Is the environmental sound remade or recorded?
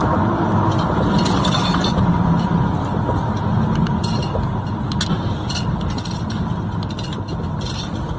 recorded